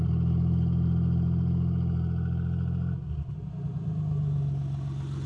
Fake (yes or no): no